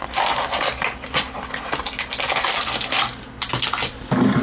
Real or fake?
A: real